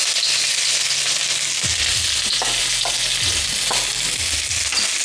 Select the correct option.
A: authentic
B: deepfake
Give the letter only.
A